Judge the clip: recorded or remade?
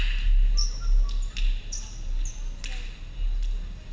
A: recorded